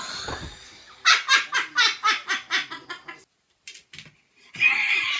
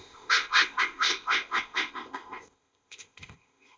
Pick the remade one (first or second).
second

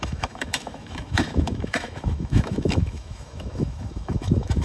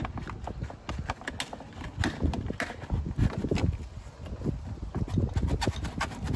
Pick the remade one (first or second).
first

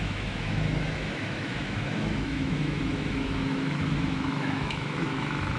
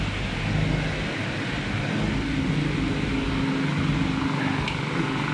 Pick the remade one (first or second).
first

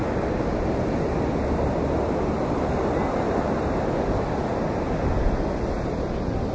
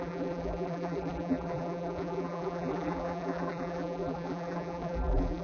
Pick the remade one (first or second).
second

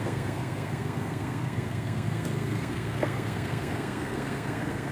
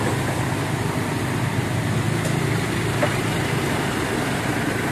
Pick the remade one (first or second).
first